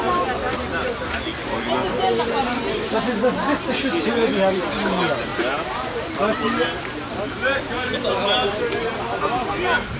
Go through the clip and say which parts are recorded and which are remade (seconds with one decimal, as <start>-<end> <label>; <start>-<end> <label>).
0.0-10.0 recorded